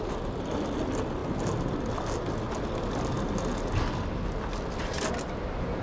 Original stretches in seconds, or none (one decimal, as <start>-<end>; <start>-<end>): 0.0-5.8